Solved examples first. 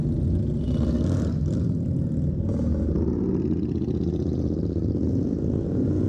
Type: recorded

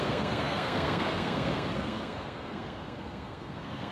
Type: remade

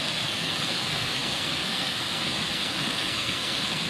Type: remade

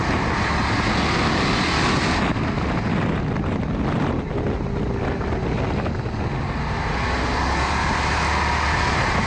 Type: recorded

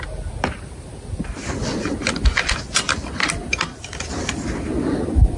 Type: recorded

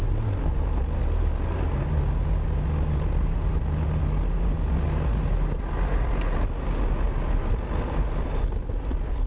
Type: recorded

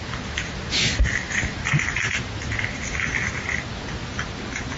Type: recorded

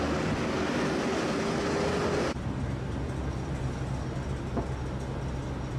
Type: recorded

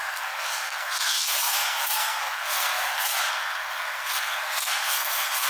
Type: remade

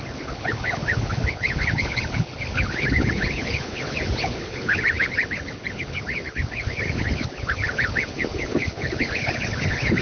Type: remade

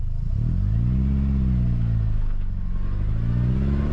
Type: recorded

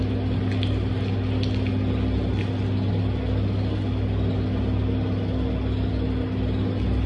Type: recorded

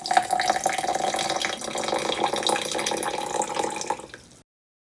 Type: recorded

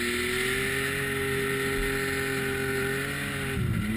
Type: recorded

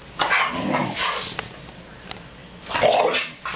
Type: recorded